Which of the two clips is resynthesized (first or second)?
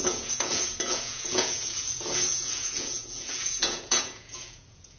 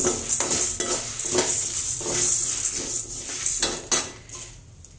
first